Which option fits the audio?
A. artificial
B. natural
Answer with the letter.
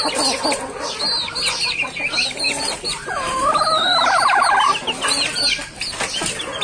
B